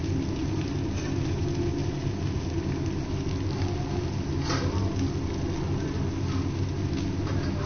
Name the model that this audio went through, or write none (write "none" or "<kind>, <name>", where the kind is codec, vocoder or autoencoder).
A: none